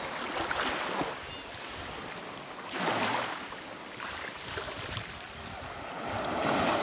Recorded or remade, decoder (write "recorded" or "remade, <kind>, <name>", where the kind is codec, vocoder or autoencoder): recorded